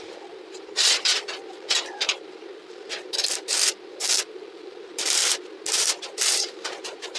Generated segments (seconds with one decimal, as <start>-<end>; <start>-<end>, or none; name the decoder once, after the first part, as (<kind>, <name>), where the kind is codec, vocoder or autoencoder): 0.0-5.2 (vocoder, BigVGAN v2); 6.1-7.2